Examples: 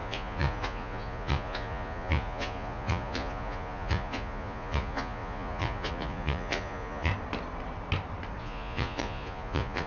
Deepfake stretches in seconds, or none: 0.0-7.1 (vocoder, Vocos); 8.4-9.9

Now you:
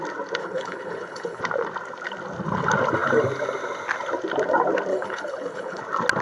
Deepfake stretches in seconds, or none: 0.4-1.4 (codec, HILCodec); 4.9-5.8

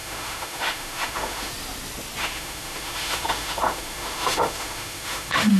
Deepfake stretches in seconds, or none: 0.0-1.5 (autoencoder, DAC-VAE); 2.2-5.6

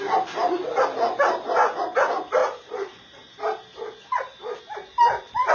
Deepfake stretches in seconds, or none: 2.4-4.6 (vocoder, BigVGAN v2)

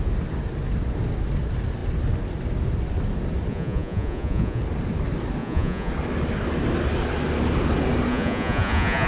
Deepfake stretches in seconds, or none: 3.5-4.6 (vocoder, Vocos); 5.4-5.9; 8.1-9.1

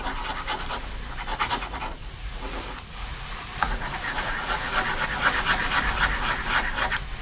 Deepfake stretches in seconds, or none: 1.3-4.7 (vocoder, Vocos)

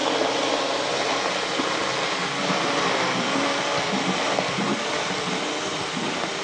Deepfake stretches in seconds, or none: none